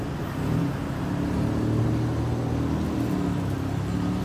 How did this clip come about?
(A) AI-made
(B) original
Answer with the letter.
B